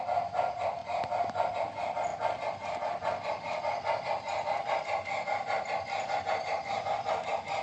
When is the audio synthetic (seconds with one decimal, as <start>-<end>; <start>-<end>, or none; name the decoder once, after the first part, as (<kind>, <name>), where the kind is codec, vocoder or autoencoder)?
none